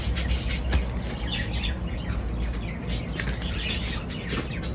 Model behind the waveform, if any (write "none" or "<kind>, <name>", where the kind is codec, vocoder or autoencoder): none